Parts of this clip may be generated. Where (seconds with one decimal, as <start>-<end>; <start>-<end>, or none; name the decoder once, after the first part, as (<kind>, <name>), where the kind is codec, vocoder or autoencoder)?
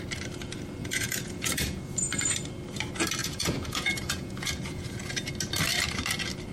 0.8-2.0 (vocoder, Vocos); 3.2-5.3